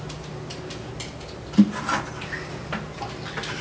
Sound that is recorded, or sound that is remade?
recorded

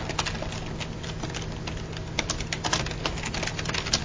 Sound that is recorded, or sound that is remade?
recorded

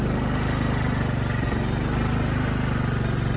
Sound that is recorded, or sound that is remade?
recorded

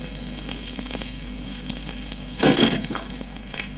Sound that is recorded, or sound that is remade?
remade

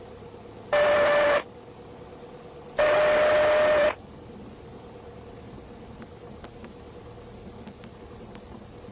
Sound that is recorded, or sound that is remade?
recorded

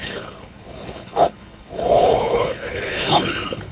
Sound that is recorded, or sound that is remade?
remade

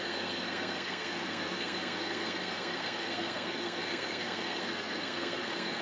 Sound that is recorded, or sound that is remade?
remade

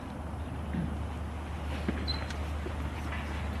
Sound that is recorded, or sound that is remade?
recorded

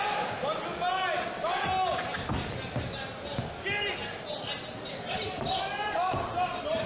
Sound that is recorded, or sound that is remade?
recorded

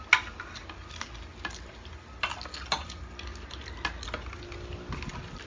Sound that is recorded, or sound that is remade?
recorded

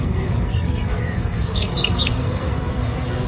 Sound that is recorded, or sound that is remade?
remade